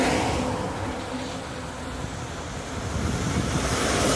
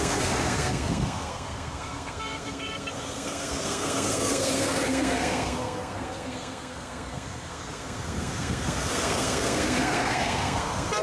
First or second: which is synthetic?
second